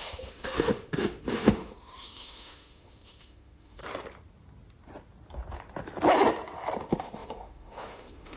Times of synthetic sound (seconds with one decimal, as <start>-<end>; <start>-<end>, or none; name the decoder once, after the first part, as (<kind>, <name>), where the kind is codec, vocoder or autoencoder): 0.0-3.8 (autoencoder, DAC-VAE); 6.8-8.4